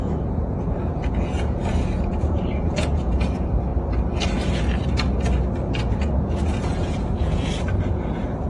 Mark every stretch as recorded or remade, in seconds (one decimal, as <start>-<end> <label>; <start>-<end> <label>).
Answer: 0.0-3.7 remade; 3.7-5.6 recorded; 5.6-8.5 remade